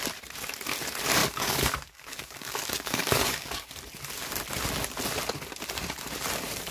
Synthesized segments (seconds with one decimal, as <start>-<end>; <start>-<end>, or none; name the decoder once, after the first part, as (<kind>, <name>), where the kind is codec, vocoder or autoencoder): 1.2-3.7 (codec, DAC)